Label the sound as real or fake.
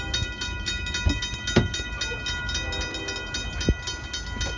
real